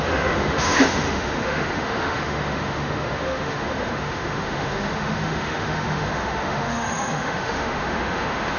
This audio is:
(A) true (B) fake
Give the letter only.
B